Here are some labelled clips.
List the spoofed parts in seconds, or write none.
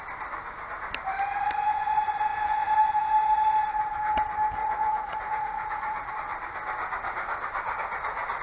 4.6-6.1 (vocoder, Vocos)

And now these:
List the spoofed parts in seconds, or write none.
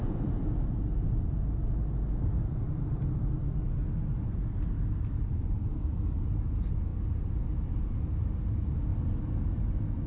6.9-7.4 (vocoder, BigVGAN v2); 8.9-9.6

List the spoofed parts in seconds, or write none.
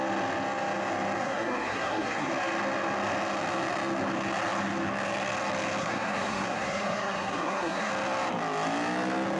1.2-2.3 (codec, SNAC); 5.8-7.9